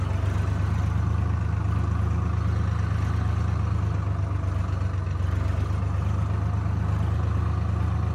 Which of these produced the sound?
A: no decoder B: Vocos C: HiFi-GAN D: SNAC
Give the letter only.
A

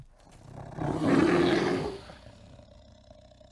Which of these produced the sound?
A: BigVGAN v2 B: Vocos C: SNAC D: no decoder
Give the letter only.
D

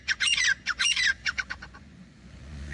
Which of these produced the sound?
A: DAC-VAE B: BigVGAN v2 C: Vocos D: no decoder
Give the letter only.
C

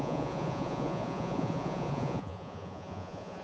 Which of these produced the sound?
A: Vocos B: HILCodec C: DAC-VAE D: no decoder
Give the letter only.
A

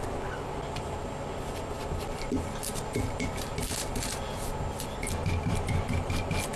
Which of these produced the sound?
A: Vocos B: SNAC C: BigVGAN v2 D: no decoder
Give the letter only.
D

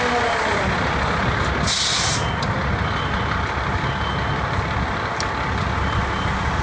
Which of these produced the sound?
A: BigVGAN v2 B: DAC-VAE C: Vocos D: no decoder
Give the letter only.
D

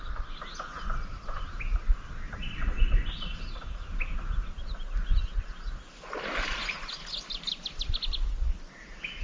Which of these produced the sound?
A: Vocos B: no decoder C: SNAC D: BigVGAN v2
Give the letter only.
B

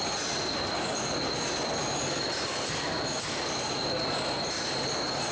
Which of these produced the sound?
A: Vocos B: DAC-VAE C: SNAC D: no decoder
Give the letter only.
D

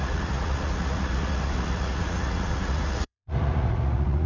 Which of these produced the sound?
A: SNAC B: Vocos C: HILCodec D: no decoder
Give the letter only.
B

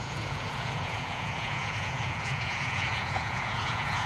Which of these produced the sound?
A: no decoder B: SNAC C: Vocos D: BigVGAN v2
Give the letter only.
C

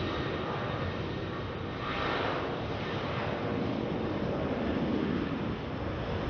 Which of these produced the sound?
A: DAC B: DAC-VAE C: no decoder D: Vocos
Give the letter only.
C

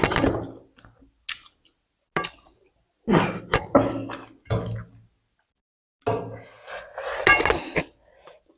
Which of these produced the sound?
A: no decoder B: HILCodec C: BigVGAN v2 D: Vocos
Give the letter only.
A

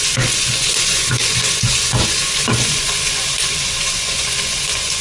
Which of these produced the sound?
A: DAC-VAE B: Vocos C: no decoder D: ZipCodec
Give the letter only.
B